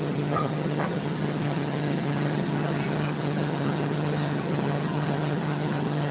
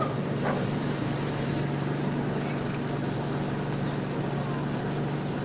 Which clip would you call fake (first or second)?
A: first